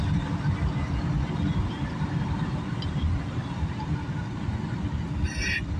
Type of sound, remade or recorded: recorded